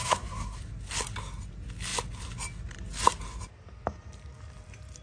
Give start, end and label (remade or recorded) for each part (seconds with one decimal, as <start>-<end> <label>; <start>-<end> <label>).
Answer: 0.0-0.6 remade; 0.6-5.0 recorded